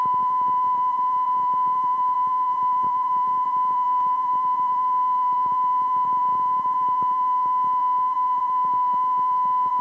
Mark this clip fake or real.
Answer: fake